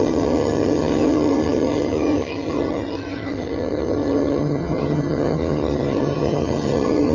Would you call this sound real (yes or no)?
no